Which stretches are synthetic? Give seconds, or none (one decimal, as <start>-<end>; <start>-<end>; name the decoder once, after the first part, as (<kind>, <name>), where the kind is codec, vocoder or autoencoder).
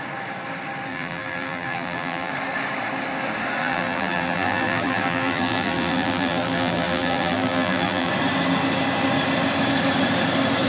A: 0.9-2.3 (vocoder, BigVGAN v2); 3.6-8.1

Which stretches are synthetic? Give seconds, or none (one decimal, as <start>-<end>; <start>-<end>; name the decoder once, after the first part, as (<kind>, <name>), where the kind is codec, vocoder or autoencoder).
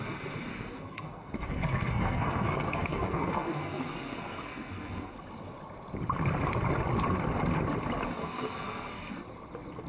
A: 0.5-5.1 (codec, SNAC); 8.2-9.1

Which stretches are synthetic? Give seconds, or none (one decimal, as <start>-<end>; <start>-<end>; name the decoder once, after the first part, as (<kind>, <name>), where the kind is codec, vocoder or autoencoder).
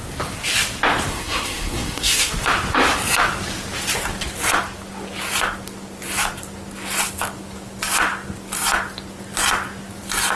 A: 1.1-2.3 (codec, SNAC)